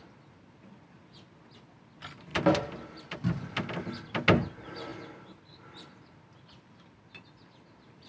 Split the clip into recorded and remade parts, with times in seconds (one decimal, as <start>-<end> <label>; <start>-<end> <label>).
0.0-8.1 recorded